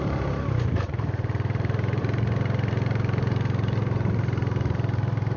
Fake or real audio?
fake